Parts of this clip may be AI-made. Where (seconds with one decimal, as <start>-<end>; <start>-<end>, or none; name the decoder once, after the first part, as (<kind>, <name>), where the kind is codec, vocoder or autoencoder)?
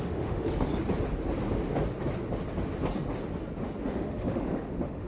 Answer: 0.0-0.7 (autoencoder, DAC-VAE); 3.8-5.1